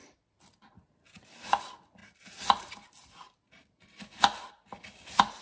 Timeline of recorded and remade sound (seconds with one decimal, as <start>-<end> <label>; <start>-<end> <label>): 0.0-5.4 recorded